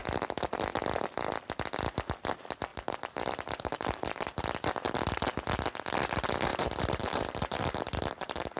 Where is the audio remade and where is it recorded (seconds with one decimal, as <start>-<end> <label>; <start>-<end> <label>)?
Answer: 0.0-2.7 recorded; 2.7-4.4 remade; 4.4-6.5 recorded; 6.5-8.6 remade